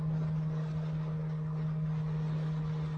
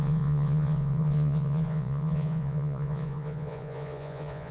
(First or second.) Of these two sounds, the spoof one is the second